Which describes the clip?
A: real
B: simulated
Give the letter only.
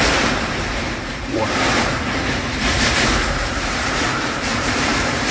B